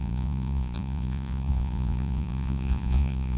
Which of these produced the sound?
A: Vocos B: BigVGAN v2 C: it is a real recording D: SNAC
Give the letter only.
A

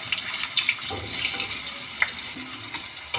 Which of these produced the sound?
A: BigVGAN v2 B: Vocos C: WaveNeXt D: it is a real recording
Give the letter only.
D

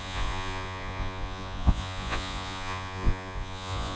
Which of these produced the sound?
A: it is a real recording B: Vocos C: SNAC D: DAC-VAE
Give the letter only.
B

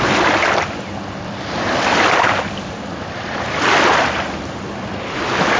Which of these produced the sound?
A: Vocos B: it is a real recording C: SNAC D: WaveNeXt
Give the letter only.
B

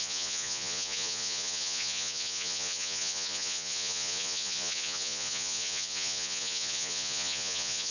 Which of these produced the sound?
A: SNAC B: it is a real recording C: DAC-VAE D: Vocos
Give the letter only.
D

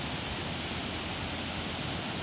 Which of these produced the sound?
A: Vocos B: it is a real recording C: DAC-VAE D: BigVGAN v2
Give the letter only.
B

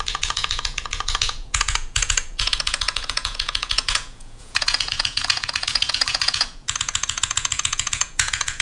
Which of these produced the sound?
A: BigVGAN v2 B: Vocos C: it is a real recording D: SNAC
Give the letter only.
B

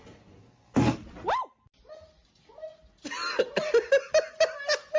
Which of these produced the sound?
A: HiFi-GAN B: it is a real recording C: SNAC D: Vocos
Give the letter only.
B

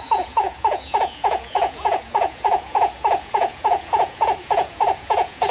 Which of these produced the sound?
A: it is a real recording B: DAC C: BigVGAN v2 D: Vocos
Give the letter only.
D